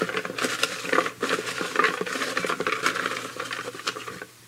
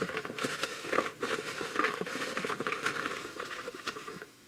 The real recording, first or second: first